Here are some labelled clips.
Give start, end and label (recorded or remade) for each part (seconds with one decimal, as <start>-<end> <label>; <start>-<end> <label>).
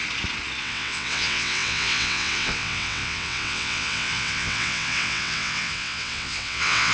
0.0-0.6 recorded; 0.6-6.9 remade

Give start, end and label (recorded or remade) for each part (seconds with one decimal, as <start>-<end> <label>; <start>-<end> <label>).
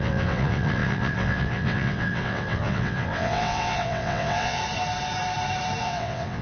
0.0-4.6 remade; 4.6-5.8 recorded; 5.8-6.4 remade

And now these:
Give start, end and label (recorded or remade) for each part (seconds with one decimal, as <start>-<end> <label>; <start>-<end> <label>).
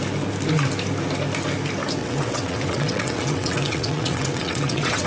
0.0-2.0 recorded; 2.0-5.1 remade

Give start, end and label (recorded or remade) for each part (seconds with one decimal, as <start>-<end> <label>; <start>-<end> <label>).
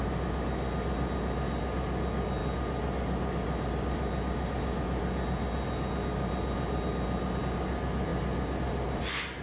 0.0-9.4 recorded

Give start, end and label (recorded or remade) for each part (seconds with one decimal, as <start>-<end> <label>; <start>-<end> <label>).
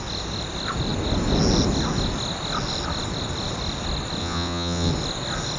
0.0-4.2 recorded; 4.2-4.9 remade; 4.9-5.6 recorded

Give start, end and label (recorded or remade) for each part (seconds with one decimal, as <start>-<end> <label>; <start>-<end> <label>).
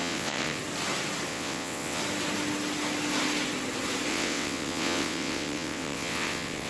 0.0-0.6 remade; 0.6-1.3 recorded; 1.3-2.0 remade; 2.0-4.1 recorded; 4.1-6.7 remade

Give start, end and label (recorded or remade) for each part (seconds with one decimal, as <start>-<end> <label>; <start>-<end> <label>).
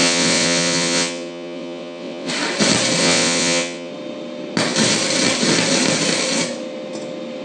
0.0-2.3 remade; 2.3-3.0 recorded; 3.0-3.9 remade; 3.9-7.4 recorded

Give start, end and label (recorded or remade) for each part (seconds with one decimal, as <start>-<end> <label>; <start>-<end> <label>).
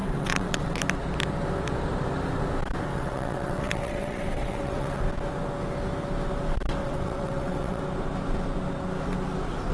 0.0-0.8 remade; 0.8-2.9 recorded; 2.9-5.0 remade; 5.0-6.8 recorded; 6.8-7.8 remade; 7.8-9.7 recorded